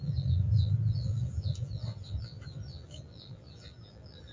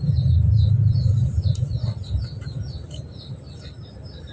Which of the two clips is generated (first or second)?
first